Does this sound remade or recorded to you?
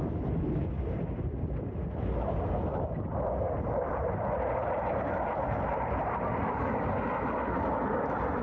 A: recorded